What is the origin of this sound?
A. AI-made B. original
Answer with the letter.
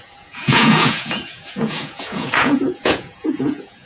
A